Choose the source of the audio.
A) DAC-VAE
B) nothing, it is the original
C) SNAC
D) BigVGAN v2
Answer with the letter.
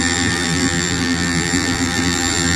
D